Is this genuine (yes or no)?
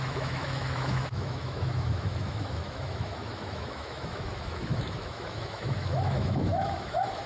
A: no